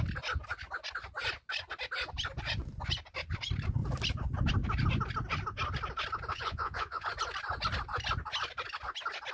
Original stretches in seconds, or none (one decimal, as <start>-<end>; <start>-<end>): 0.0-6.3; 7.1-9.3